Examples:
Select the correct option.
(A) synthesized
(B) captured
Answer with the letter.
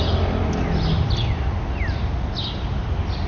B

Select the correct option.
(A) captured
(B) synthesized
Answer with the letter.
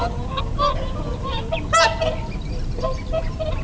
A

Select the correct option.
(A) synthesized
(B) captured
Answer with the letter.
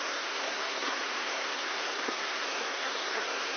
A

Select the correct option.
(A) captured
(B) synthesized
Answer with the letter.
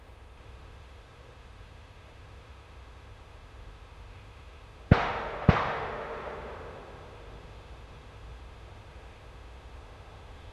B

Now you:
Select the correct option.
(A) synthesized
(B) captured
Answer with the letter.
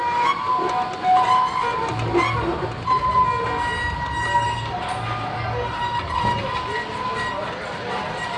B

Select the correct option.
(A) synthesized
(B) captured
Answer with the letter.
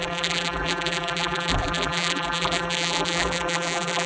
A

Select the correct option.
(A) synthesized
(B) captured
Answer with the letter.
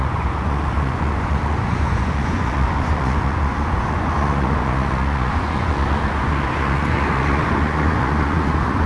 A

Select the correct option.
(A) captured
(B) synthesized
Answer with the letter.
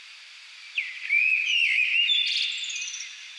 B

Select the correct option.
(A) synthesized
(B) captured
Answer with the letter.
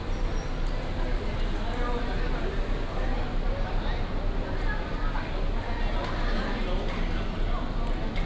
B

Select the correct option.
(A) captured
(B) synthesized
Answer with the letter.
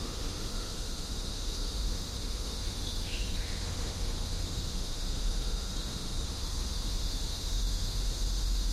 B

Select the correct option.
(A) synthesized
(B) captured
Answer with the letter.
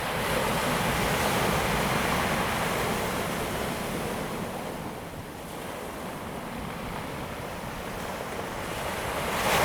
B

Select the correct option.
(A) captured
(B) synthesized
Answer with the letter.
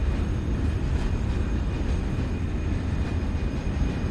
A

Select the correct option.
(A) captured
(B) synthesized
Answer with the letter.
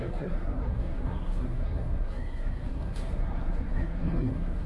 B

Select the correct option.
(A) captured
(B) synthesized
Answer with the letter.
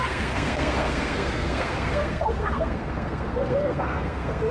B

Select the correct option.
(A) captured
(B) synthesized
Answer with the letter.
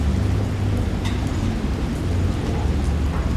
A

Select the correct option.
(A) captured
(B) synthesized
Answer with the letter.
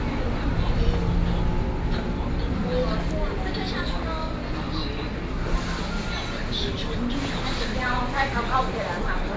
A